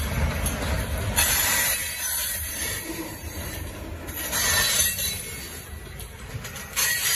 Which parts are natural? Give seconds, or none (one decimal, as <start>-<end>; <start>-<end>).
0.0-1.8; 4.1-4.9; 6.3-7.1